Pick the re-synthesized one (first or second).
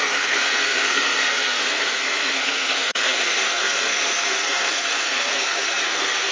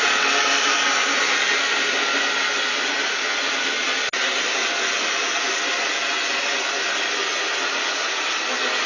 first